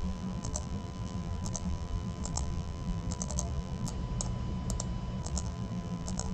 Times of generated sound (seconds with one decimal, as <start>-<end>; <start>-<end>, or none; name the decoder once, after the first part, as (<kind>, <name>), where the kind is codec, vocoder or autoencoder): 0.0-3.9 (vocoder, BigVGAN v2); 5.2-6.3